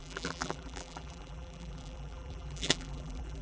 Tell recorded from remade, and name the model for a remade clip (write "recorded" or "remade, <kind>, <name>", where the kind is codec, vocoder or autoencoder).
remade, vocoder, BigVGAN v2